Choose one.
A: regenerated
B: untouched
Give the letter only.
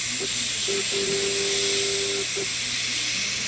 B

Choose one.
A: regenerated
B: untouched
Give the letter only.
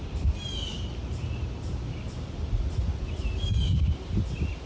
B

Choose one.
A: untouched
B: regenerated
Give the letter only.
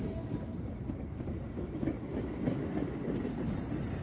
A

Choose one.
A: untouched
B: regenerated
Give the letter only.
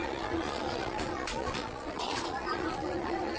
B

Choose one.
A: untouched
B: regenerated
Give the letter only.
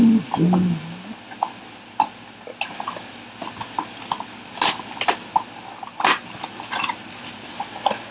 A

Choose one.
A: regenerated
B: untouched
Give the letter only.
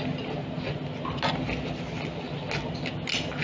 B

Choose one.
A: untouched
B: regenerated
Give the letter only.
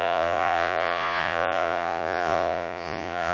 B